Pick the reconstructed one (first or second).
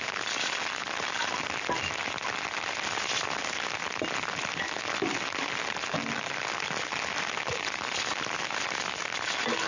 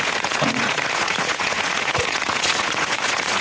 second